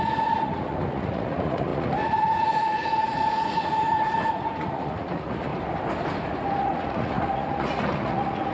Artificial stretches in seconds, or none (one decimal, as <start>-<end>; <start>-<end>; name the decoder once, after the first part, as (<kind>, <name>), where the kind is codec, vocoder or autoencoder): 0.0-5.5 (vocoder, Vocos); 6.6-8.5